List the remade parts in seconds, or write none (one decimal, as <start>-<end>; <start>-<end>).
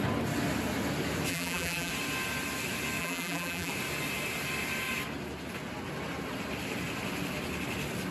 1.3-1.9; 3.0-3.7